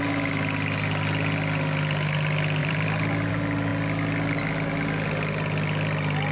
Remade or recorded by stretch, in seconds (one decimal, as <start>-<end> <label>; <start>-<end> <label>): 0.0-2.6 recorded; 2.6-3.3 remade; 3.3-6.3 recorded